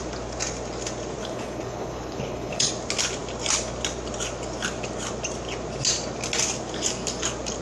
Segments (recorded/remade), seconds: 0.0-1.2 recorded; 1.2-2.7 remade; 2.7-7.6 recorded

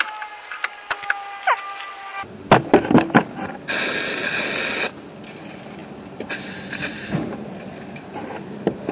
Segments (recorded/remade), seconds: 0.0-8.9 recorded

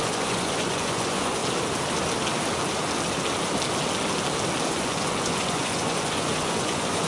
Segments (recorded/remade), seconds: 0.0-1.4 remade; 1.4-4.7 recorded; 4.7-7.1 remade